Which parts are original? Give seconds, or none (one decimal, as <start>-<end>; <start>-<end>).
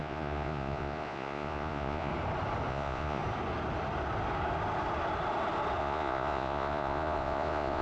2.1-2.7; 3.2-5.8